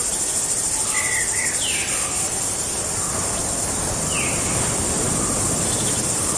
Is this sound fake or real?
real